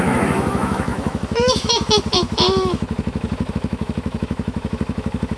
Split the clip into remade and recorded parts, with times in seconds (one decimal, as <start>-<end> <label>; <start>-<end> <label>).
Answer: 0.0-5.4 remade